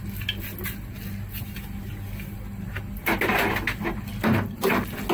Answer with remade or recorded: recorded